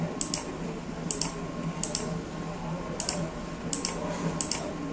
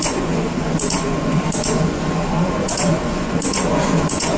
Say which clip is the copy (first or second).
second